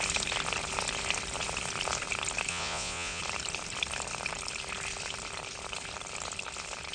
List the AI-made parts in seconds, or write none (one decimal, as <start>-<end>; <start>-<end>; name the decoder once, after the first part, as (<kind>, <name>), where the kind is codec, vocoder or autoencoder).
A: 2.5-3.2 (vocoder, Vocos)